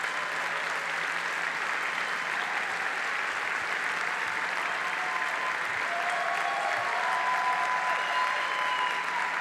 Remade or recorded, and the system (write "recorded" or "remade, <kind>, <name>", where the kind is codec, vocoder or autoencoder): recorded